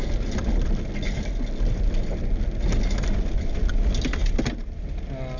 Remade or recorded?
recorded